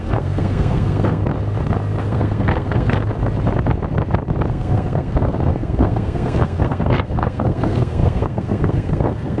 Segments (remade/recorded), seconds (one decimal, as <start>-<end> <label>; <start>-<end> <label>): 0.0-1.2 remade; 1.2-2.0 recorded; 2.0-3.1 remade; 3.1-4.5 recorded; 4.5-9.4 remade

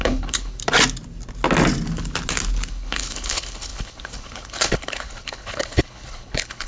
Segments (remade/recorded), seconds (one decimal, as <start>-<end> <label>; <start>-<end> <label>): 0.0-0.6 remade; 0.6-2.7 recorded; 2.7-6.7 remade

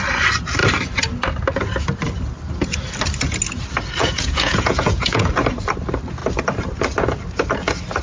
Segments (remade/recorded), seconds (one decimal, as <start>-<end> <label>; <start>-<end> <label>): 0.0-4.0 recorded; 4.0-5.3 remade; 5.3-8.0 recorded